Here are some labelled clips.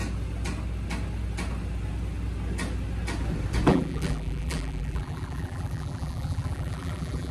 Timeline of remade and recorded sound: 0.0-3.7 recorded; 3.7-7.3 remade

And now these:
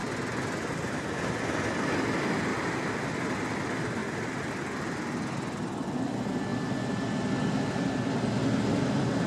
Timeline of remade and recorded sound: 0.0-1.8 remade; 1.8-2.5 recorded; 2.5-3.1 remade; 3.1-4.0 recorded; 4.0-4.5 remade; 4.5-9.3 recorded

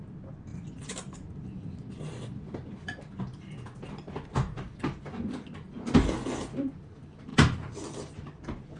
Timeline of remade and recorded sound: 0.0-0.5 recorded; 0.5-3.2 remade; 3.2-7.3 recorded; 7.3-8.8 remade

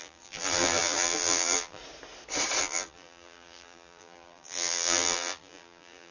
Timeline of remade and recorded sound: 0.0-1.8 remade; 1.8-2.6 recorded; 2.6-6.1 remade

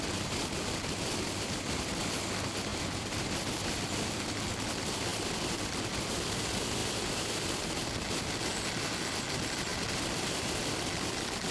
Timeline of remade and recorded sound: 0.0-2.7 recorded; 2.7-3.9 remade; 3.9-9.7 recorded; 9.7-10.4 remade; 10.4-11.5 recorded